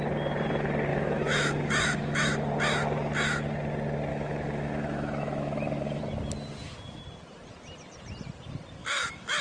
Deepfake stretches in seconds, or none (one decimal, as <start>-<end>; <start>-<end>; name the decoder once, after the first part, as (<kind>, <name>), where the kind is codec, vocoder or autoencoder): 0.9-2.3 (autoencoder, DAC-VAE); 4.1-6.0; 8.8-9.4